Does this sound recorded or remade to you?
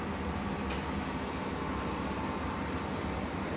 recorded